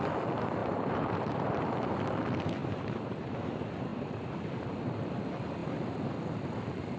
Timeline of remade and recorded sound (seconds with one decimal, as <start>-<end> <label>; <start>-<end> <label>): 0.0-0.6 recorded; 0.6-1.7 remade; 1.7-2.6 recorded; 2.6-3.3 remade; 3.3-7.0 recorded